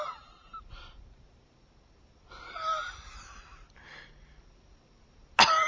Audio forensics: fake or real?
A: real